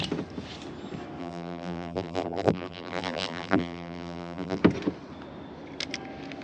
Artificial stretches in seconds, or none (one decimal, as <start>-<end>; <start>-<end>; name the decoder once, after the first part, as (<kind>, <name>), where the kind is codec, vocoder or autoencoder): 1.2-4.6 (vocoder, BigVGAN v2)